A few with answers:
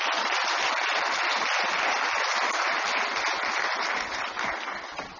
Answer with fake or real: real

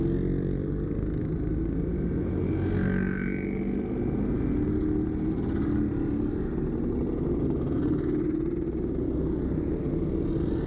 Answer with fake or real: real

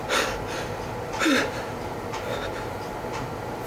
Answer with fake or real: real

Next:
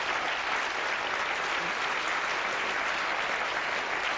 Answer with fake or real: real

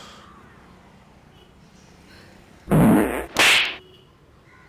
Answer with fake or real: real